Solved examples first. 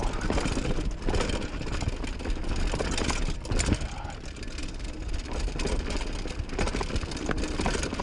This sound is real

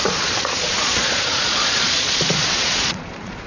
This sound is fake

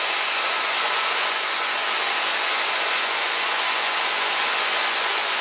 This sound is fake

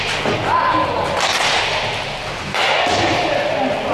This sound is real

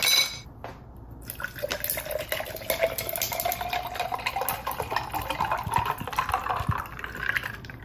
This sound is real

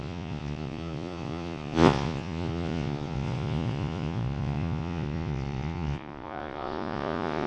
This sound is fake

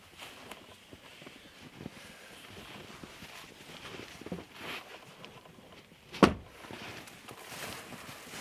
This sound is real